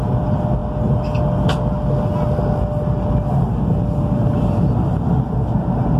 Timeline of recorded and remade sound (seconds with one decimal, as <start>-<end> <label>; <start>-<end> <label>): 0.0-6.0 recorded